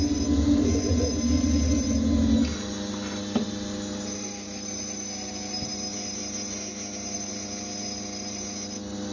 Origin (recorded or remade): recorded